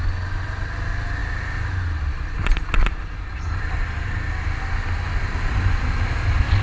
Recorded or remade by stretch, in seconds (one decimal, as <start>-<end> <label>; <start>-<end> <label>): 0.0-6.6 recorded